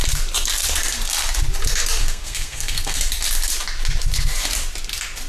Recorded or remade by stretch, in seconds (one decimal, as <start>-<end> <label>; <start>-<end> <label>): 0.0-2.0 recorded; 2.0-3.0 remade; 3.0-5.3 recorded

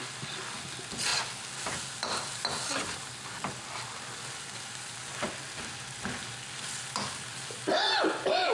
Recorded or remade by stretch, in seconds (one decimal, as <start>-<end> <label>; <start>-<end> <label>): 0.0-8.5 recorded

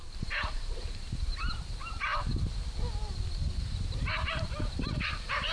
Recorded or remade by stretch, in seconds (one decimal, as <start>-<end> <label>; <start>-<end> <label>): 0.0-2.1 remade; 2.1-3.7 recorded; 3.7-5.5 remade

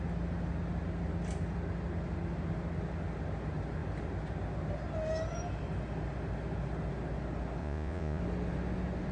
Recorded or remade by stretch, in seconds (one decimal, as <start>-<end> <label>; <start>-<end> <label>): 0.0-7.6 recorded; 7.6-8.2 remade; 8.2-9.1 recorded

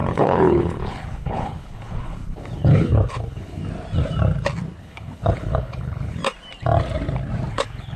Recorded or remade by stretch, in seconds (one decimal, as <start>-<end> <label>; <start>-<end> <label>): 0.0-3.6 remade; 3.6-4.8 recorded; 4.8-6.2 remade; 6.2-7.5 recorded; 7.5-8.0 remade

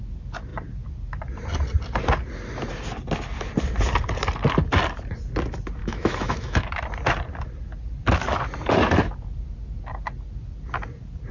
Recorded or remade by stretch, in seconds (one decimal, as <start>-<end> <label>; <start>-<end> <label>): 0.0-5.8 recorded; 5.8-6.7 remade; 6.7-11.3 recorded

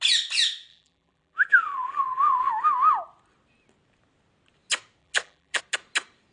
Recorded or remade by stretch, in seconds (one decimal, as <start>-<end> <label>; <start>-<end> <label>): 0.0-0.7 recorded; 0.7-2.5 remade; 2.5-5.0 recorded; 5.0-5.6 remade; 5.6-6.3 recorded

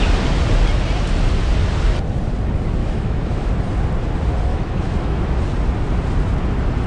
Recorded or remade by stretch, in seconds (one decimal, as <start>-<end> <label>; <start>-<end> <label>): 0.0-2.8 recorded; 2.8-3.5 remade; 3.5-4.5 recorded; 4.5-5.4 remade; 5.4-6.9 recorded